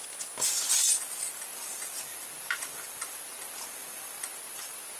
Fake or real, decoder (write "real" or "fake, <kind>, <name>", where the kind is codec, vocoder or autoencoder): real